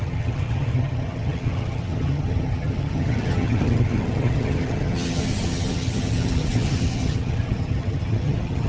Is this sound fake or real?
fake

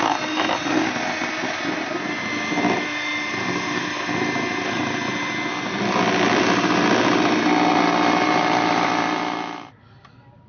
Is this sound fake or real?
real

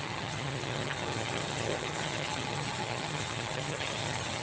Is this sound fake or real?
fake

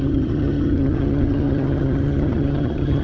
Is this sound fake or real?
fake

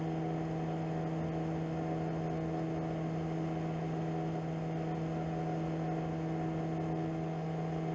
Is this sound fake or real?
real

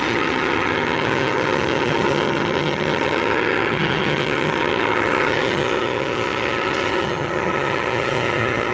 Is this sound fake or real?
fake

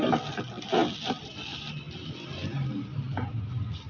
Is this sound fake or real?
real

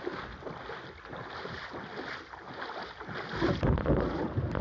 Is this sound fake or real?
real